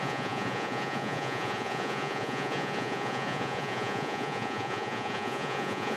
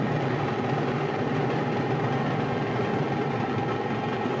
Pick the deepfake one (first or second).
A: first